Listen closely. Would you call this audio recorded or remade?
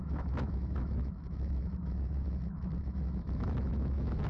remade